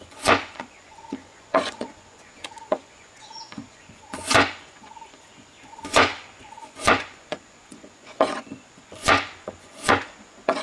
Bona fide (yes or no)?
no